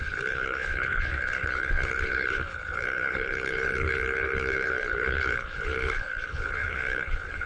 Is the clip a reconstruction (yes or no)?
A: yes